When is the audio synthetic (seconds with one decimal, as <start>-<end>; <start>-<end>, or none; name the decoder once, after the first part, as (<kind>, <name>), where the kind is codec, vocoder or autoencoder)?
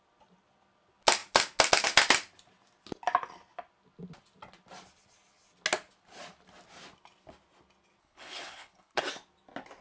8.0-9.0 (codec, HILCodec)